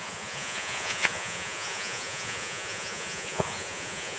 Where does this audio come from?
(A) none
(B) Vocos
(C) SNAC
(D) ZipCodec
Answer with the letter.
B